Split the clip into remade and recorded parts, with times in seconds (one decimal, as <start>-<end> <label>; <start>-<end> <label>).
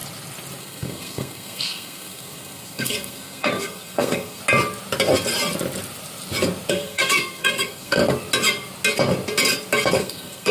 0.0-0.6 recorded; 0.6-4.4 remade; 4.4-6.7 recorded; 6.7-8.0 remade; 8.0-9.9 recorded; 9.9-10.5 remade